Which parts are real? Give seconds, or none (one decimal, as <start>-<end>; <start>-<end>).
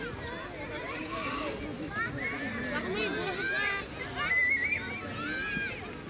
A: 0.0-6.1